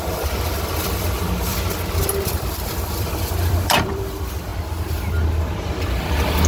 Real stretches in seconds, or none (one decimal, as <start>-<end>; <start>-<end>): 1.5-3.0; 4.5-5.4